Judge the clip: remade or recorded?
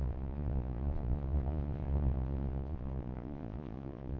remade